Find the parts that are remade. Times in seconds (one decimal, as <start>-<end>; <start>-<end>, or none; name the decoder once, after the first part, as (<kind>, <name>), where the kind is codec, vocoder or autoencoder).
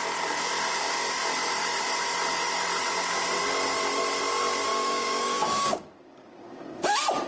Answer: 4.7-6.8 (codec, DAC)